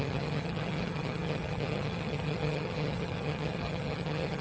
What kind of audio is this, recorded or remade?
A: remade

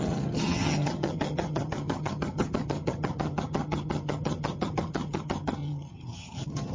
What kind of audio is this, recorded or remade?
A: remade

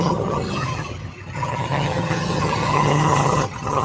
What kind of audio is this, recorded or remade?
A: remade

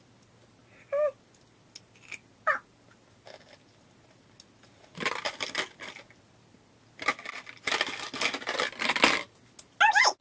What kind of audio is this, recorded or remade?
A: recorded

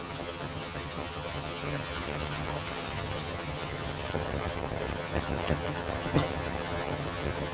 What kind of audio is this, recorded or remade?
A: remade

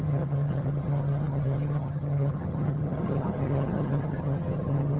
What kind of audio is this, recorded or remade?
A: remade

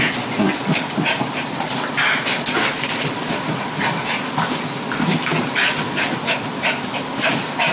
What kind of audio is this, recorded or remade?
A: recorded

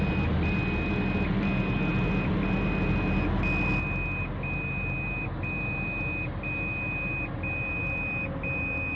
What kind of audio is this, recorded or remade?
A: recorded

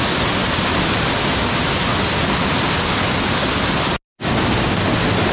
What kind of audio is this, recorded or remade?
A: recorded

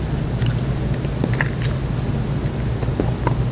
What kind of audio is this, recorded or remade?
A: recorded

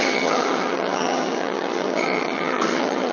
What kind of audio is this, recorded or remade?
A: remade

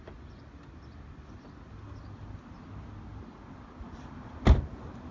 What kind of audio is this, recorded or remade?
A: recorded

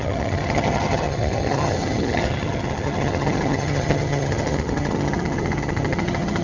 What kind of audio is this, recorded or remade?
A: remade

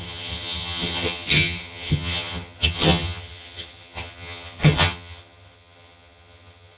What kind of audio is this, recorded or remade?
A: remade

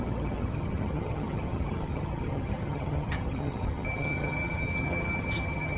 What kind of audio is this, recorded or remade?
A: remade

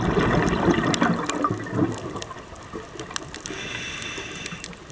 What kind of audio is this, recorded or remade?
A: recorded